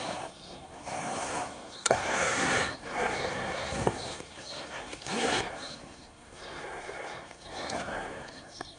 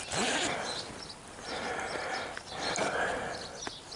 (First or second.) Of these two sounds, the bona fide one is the second